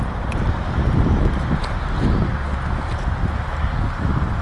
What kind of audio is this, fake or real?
real